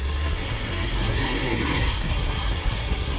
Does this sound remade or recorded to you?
remade